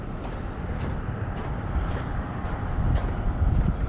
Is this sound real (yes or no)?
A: no